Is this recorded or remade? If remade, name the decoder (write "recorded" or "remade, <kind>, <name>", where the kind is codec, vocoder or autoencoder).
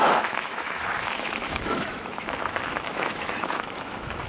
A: remade, autoencoder, DAC-VAE